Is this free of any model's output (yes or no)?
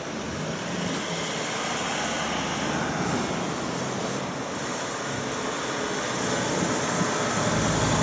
yes